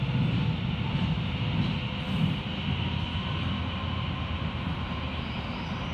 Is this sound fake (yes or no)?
no